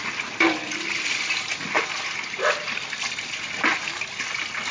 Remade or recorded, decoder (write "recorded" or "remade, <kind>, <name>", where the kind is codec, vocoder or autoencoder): recorded